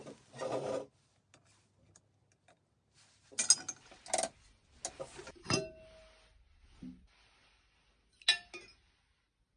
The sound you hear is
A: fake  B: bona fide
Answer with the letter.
B